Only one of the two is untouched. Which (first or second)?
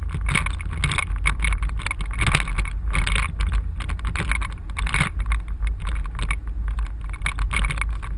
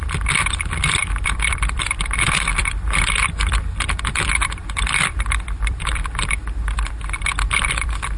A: first